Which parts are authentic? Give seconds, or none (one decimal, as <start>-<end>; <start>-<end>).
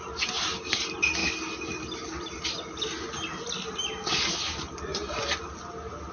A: 0.0-6.1